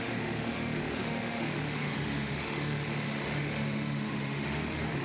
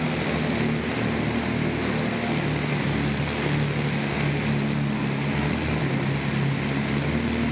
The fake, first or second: first